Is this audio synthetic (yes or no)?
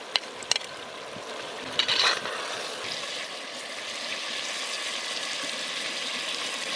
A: no